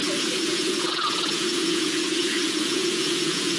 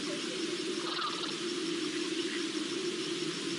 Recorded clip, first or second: second